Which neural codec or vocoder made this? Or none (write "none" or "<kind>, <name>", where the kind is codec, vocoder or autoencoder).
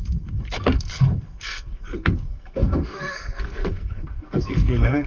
codec, SNAC